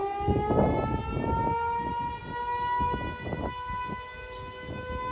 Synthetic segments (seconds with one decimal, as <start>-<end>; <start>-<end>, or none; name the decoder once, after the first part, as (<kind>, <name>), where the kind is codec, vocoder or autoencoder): none